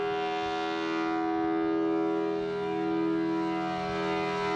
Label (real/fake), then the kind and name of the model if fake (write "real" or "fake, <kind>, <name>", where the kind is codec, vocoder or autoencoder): real